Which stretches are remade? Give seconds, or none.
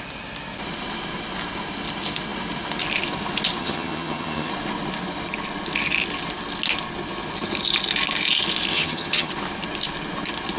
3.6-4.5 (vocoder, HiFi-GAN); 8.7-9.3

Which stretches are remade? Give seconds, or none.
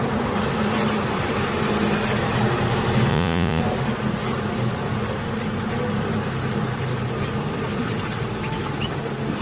3.1-3.6 (vocoder, Vocos)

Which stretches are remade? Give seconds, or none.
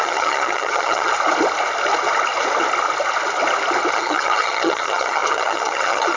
0.0-1.1 (vocoder, HiFi-GAN); 3.9-6.2